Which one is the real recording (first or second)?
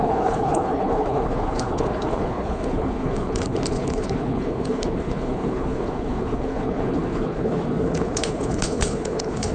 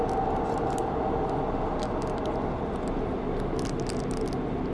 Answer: second